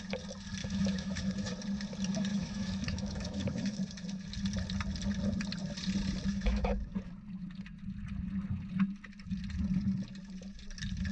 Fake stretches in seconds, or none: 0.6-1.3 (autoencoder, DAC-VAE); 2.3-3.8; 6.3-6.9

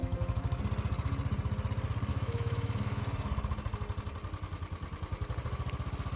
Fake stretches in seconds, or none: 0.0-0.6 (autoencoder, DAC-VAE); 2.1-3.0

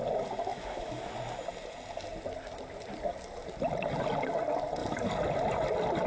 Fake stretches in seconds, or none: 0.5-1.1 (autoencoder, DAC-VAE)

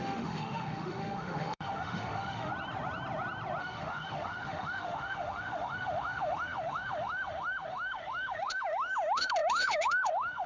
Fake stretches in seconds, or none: 0.0-2.5 (autoencoder, DAC-VAE); 3.6-10.5